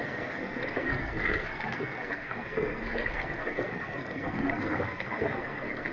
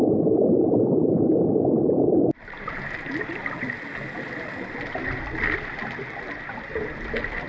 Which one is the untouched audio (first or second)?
second